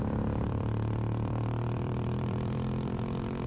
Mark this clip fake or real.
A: fake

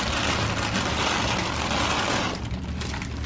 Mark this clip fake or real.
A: real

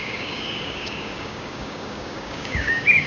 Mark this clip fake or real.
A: fake